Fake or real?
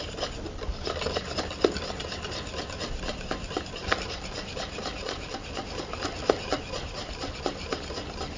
real